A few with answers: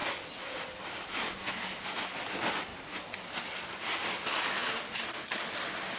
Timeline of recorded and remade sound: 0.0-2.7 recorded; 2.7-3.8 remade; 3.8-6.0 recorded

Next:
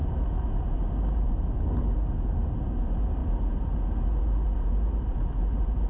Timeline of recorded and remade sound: 0.0-5.9 recorded

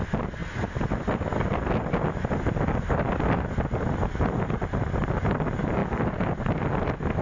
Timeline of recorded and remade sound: 0.0-7.2 recorded

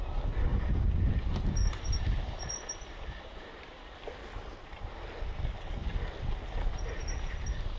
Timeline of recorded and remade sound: 0.0-0.5 recorded; 0.5-1.1 remade; 1.1-4.2 recorded; 4.2-4.9 remade; 4.9-7.8 recorded

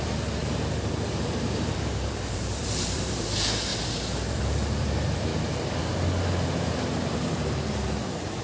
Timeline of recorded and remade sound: 0.0-3.7 remade; 3.7-4.3 recorded; 4.3-5.3 remade; 5.3-7.1 recorded; 7.1-8.4 remade

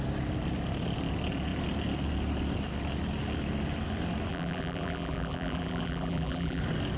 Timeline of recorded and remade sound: 0.0-4.3 recorded; 4.3-6.6 remade; 6.6-7.0 recorded

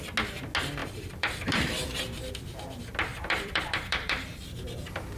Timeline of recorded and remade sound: 0.0-0.8 recorded; 0.8-2.3 remade; 2.3-3.1 recorded; 3.1-4.2 remade; 4.2-5.2 recorded

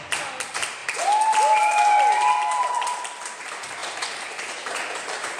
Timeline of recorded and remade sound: 0.0-3.8 recorded; 3.8-5.4 remade